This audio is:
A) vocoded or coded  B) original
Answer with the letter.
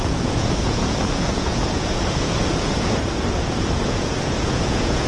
A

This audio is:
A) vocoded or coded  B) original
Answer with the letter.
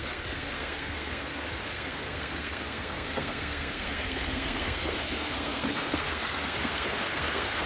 A